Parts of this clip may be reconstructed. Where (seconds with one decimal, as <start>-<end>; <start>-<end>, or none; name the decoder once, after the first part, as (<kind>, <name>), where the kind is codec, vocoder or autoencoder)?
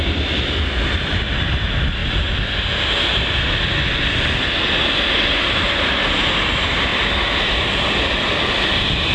6.9-9.1 (vocoder, BigVGAN v2)